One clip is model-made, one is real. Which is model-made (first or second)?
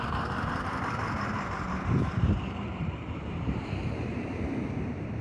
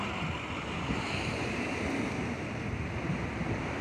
first